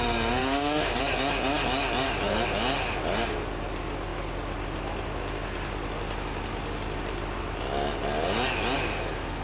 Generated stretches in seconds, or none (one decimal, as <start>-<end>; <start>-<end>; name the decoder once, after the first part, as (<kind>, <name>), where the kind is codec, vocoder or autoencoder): 0.4-1.0 (codec, DAC)